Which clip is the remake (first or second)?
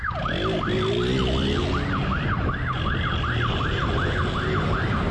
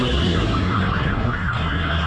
second